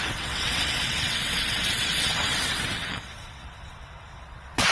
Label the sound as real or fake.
fake